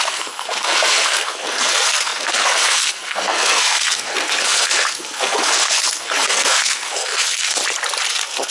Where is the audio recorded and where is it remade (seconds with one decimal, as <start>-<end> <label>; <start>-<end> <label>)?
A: 0.0-7.6 remade; 7.6-8.1 recorded; 8.1-8.5 remade